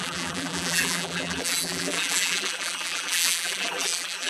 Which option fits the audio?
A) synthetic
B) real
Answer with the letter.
A